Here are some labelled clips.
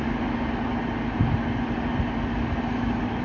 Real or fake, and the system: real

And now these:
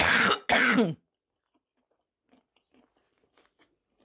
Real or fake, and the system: real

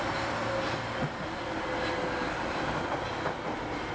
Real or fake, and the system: real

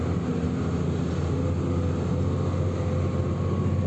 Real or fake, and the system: real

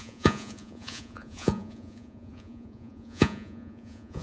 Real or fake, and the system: fake, vocoder, Vocos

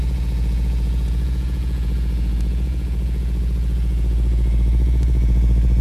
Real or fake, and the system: fake, vocoder, Vocos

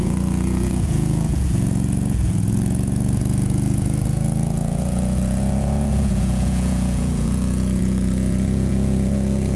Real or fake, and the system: fake, vocoder, Vocos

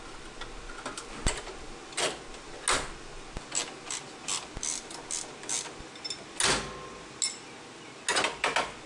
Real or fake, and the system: real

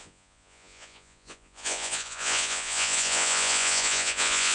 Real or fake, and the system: fake, vocoder, Vocos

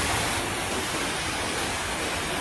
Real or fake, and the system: real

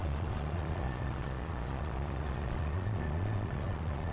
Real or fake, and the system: fake, vocoder, Vocos